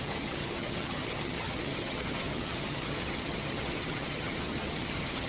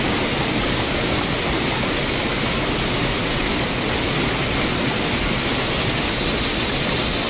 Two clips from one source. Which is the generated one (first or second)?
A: first